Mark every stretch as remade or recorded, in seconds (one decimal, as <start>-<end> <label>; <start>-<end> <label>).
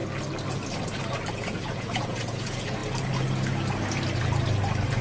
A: 0.0-1.3 recorded; 1.3-2.8 remade; 2.8-5.0 recorded